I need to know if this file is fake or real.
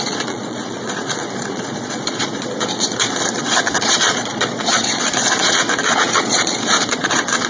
fake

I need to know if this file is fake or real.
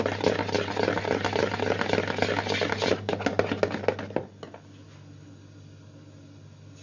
real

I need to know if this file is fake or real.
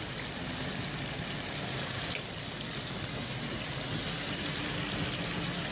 real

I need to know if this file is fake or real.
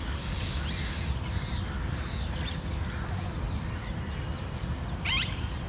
real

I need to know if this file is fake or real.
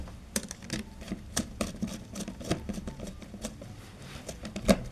real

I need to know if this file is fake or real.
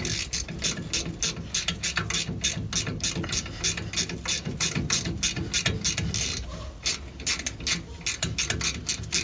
real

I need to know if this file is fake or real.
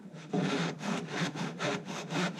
fake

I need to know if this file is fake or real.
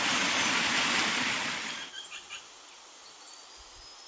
fake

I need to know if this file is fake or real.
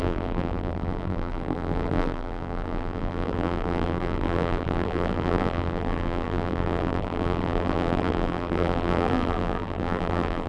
fake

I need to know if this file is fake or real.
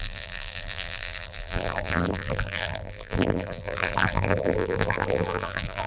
fake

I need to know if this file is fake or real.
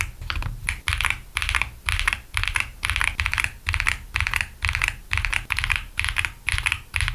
real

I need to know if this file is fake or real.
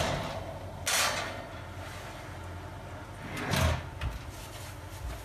real